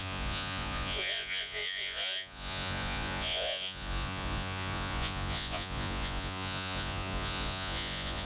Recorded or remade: remade